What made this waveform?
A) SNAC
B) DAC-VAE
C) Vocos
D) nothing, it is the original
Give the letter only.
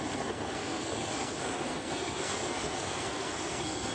A